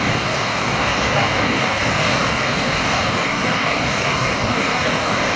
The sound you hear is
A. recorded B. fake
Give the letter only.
B